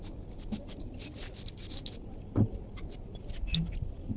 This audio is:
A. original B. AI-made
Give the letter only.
A